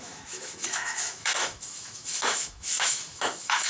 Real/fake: fake